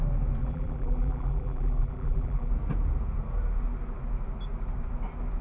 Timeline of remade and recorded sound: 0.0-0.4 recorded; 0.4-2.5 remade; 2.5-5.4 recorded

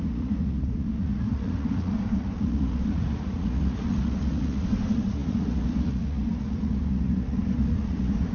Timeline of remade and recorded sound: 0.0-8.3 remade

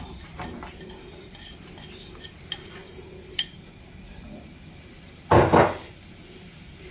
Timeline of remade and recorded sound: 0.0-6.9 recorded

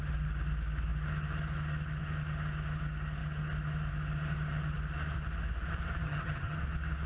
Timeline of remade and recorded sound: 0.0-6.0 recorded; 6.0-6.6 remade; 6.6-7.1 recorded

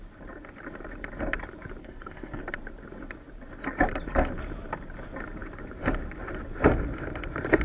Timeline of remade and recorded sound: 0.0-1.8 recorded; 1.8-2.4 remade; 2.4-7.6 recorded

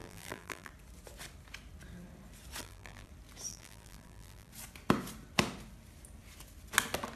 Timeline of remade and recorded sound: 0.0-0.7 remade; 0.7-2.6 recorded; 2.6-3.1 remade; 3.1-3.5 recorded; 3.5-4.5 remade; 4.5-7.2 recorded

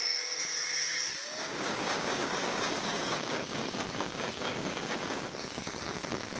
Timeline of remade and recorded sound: 0.0-6.4 remade

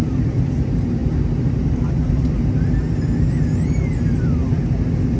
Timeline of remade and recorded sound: 0.0-5.2 recorded